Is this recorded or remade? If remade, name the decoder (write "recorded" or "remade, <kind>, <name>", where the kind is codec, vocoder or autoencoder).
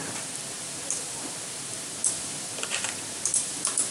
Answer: remade, vocoder, BigVGAN v2